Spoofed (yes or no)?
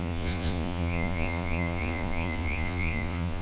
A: yes